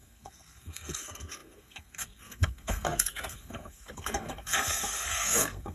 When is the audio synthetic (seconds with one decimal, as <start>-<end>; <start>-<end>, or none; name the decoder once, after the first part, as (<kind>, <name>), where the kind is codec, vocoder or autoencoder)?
0.0-5.7 (codec, SNAC)